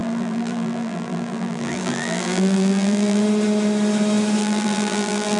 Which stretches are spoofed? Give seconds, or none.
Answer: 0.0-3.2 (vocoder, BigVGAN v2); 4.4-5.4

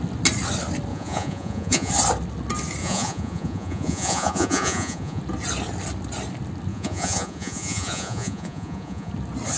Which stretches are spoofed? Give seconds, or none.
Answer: 0.9-1.9 (vocoder, Vocos); 2.8-5.2; 6.7-9.1